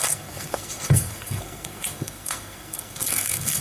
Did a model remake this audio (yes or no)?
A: yes